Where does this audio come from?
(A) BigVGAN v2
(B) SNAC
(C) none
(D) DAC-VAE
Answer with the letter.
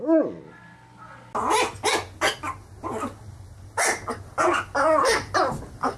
C